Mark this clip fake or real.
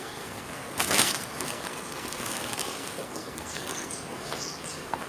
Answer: fake